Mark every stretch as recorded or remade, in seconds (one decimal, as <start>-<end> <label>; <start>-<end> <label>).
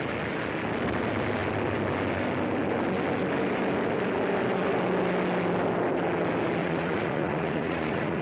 0.0-6.6 recorded; 6.6-8.2 remade